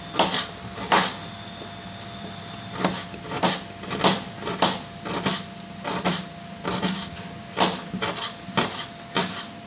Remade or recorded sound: recorded